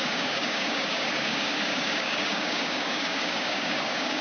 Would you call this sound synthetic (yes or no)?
yes